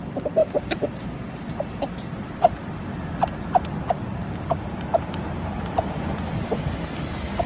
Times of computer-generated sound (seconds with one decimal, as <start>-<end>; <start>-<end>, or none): 0.4-3.6; 4.1-6.3